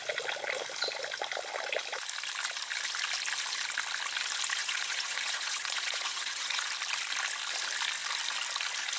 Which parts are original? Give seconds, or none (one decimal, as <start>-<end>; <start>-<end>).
0.0-4.6; 6.7-9.0